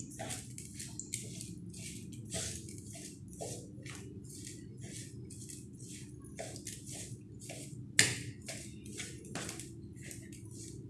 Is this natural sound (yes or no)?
yes